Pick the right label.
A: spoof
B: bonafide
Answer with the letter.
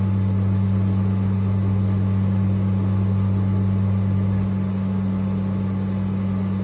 B